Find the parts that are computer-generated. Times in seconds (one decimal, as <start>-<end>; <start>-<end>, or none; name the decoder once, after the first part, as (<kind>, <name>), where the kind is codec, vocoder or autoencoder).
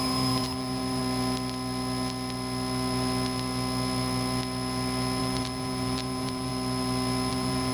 0.0-1.0 (vocoder, BigVGAN v2); 5.2-6.5; 7.3-7.7